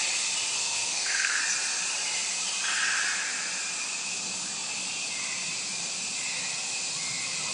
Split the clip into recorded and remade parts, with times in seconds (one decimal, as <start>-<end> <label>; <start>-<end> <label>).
0.0-0.6 recorded; 0.6-1.4 remade; 1.4-7.5 recorded